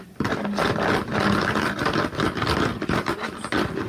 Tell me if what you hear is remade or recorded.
recorded